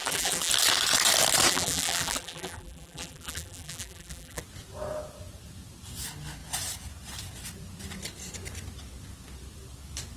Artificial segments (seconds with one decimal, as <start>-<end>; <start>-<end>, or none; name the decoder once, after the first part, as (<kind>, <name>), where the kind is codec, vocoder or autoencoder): 0.0-0.5 (vocoder, BigVGAN v2); 1.5-4.4